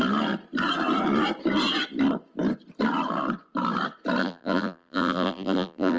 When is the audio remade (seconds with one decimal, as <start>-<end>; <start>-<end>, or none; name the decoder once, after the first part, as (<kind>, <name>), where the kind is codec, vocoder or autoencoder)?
4.2-6.0 (vocoder, BigVGAN v2)